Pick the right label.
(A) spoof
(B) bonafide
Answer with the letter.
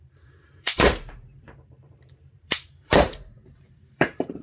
A